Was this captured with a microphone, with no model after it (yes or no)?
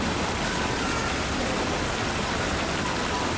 yes